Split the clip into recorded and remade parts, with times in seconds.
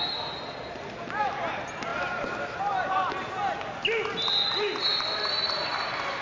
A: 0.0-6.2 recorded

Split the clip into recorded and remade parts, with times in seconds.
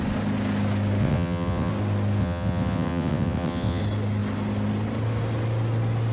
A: 0.0-1.0 recorded; 1.0-1.7 remade; 1.7-2.2 recorded; 2.2-3.8 remade; 3.8-6.1 recorded